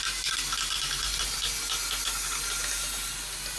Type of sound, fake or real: real